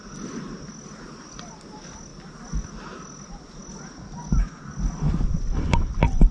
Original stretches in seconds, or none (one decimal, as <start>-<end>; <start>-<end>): 0.0-6.3